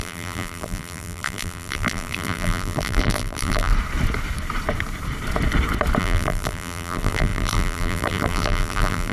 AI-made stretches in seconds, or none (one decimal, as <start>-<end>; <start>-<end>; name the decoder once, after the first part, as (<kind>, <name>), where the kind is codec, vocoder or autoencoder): 0.0-3.7 (vocoder, BigVGAN v2); 6.0-9.1